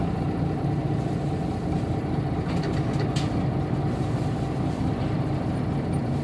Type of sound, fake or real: real